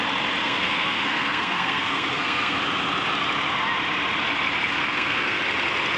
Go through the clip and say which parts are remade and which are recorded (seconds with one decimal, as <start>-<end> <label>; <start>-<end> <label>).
0.0-0.4 recorded; 0.4-2.6 remade; 2.6-4.8 recorded; 4.8-5.4 remade; 5.4-6.0 recorded